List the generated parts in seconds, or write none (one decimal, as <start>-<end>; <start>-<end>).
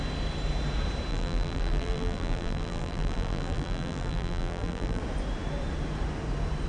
1.1-5.0